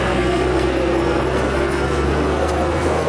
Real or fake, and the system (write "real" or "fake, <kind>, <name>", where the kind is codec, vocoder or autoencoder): fake, codec, SNAC